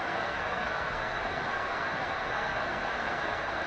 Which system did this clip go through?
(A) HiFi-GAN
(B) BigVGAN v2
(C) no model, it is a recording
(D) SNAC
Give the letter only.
D